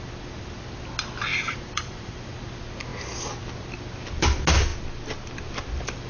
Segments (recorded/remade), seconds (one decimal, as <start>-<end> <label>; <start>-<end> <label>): 0.0-1.3 recorded; 1.3-2.3 remade; 2.3-6.1 recorded